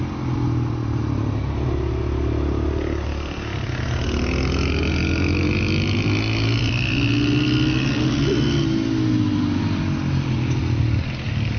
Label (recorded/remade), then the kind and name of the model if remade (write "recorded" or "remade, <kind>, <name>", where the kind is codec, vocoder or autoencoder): recorded